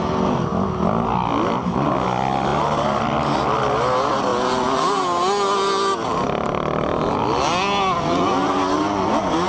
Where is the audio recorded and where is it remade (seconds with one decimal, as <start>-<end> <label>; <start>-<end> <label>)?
0.0-9.5 recorded